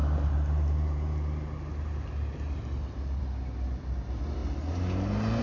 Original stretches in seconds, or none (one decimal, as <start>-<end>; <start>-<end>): 0.0-5.4